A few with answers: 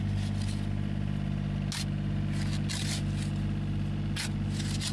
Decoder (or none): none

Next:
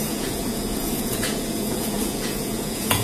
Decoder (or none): vocoder, Vocos